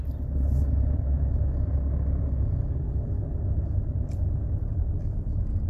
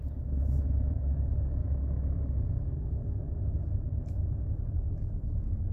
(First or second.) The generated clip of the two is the second